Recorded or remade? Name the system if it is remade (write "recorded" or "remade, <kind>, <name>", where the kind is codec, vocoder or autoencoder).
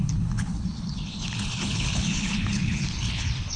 remade, codec, HILCodec